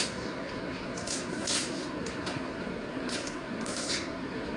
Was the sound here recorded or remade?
remade